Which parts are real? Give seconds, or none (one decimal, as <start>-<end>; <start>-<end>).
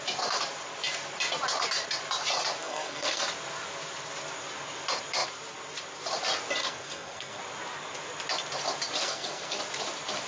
0.0-2.6; 3.2-6.6; 7.4-9.0; 9.6-10.3